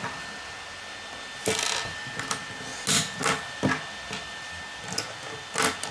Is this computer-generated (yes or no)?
no